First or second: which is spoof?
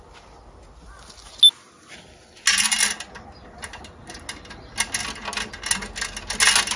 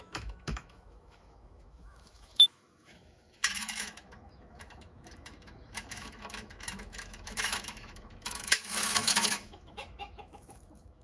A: second